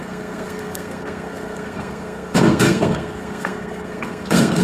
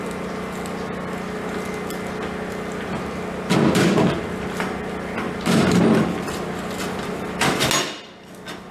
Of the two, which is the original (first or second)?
second